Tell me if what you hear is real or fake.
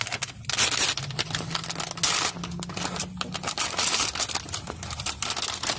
real